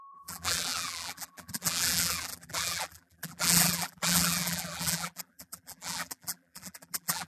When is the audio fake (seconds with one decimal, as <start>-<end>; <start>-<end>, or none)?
0.0-7.3